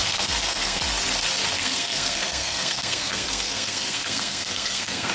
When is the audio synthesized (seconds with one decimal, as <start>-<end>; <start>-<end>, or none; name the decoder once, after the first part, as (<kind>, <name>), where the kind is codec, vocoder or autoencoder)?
0.0-0.8 (codec, SNAC); 1.6-5.1